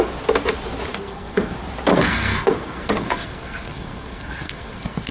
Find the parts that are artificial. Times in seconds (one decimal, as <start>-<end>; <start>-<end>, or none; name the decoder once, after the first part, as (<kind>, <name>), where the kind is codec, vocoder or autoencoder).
0.9-1.5 (codec, SNAC); 1.9-5.1